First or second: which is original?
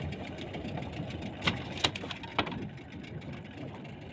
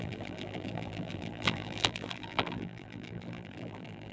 first